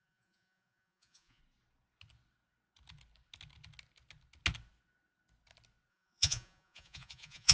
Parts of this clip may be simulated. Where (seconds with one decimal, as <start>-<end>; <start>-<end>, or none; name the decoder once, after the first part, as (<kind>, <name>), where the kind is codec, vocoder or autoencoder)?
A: 0.0-1.4 (vocoder, Vocos); 5.9-7.5